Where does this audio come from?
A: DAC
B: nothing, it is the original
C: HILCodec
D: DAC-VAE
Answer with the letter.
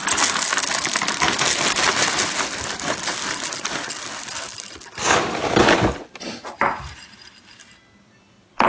B